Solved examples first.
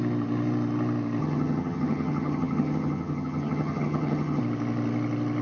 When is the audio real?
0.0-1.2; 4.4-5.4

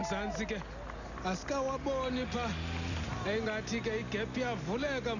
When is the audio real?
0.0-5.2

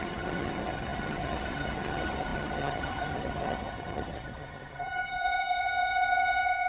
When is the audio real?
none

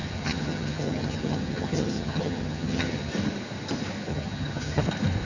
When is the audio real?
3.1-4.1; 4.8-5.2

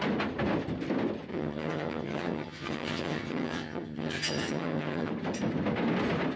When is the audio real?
0.0-1.3; 5.1-6.4

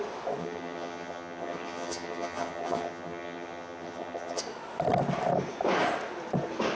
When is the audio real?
0.0-0.4; 4.4-6.7

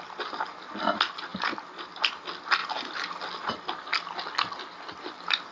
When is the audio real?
0.0-5.5